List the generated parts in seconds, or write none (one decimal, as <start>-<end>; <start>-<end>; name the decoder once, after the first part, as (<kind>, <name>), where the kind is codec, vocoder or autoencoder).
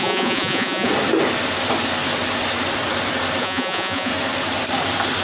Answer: 0.0-0.9 (vocoder, Vocos); 3.4-4.1